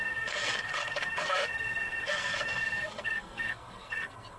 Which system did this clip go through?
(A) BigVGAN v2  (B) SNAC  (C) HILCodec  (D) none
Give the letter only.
B